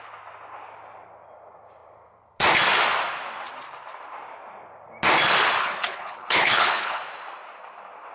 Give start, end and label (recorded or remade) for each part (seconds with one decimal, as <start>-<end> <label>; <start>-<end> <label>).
0.0-5.6 recorded; 5.6-7.0 remade; 7.0-8.1 recorded